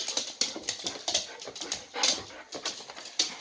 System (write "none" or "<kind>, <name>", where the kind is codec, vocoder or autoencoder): none